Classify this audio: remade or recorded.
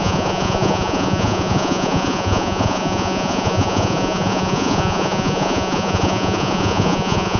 remade